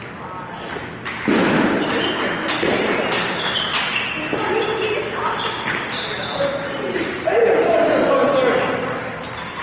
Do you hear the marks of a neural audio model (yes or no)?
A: no